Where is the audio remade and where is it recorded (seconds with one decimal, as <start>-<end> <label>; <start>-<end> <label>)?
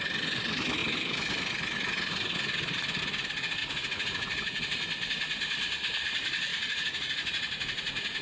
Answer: 0.0-3.6 recorded; 3.6-4.6 remade; 4.6-6.5 recorded; 6.5-8.2 remade